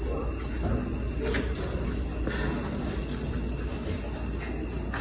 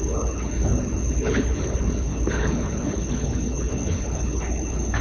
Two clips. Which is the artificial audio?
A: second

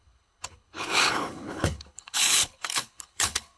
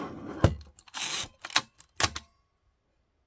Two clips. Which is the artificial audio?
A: first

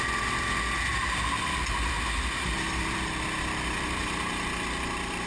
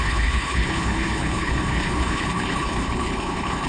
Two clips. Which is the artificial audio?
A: second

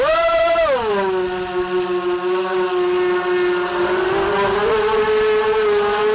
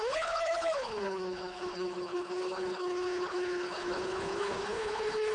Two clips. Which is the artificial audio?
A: second